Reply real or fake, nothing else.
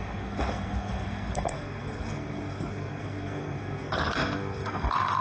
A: fake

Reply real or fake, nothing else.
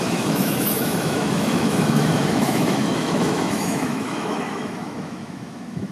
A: fake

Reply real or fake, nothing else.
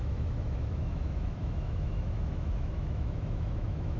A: fake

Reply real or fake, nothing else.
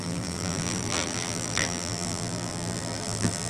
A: fake